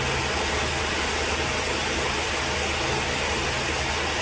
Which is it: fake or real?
real